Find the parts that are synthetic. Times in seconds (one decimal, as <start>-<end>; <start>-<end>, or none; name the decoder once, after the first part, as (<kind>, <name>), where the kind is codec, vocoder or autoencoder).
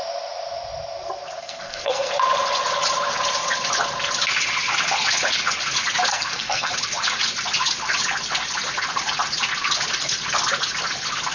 1.4-2.1 (codec, SNAC); 6.1-6.7